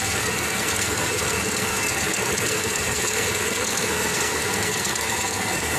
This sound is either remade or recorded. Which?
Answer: remade